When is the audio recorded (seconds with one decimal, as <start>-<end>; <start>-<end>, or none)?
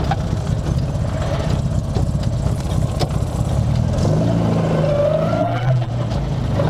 0.0-5.4; 5.9-6.7